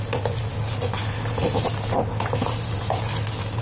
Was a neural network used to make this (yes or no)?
no